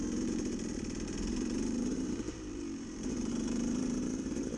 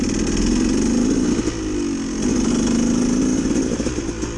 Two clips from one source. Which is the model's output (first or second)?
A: first